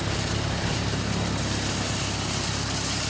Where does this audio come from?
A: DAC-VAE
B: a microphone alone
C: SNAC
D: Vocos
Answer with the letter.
B